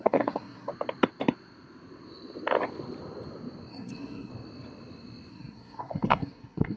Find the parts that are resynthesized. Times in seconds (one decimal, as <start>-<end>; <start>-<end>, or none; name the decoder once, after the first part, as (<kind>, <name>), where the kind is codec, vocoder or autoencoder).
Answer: 0.0-0.7 (codec, SNAC); 3.7-4.3; 5.3-6.8